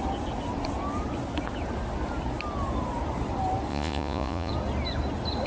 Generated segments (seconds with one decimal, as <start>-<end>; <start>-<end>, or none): 3.7-4.5